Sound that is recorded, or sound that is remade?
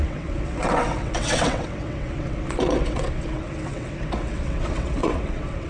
remade